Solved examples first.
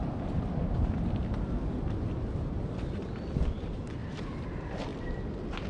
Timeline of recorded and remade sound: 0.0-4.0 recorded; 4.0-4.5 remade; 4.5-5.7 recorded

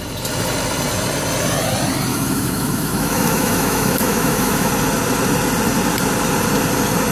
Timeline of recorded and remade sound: 0.0-2.1 recorded; 2.1-4.7 remade; 4.7-7.1 recorded

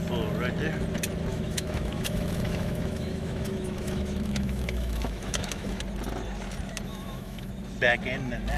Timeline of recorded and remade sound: 0.0-1.3 recorded; 1.3-5.8 remade; 5.8-6.9 recorded; 6.9-7.5 remade; 7.5-8.6 recorded